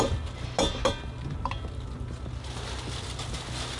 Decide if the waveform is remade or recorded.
recorded